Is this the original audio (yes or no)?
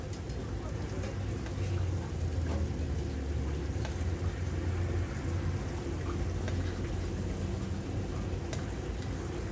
yes